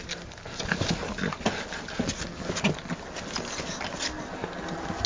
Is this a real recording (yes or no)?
yes